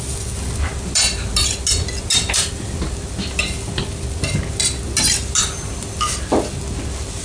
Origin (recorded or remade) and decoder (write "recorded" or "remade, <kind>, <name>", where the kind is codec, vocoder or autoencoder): recorded